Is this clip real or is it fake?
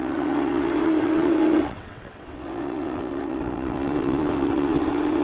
fake